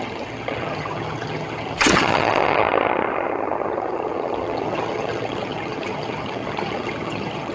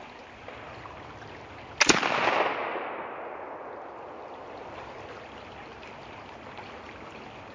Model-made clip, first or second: first